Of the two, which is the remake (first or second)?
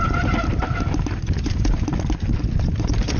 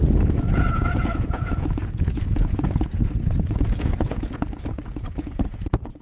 second